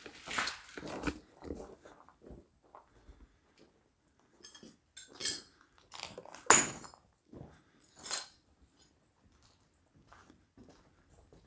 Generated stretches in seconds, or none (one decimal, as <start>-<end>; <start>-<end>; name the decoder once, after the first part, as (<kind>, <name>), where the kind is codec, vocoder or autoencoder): none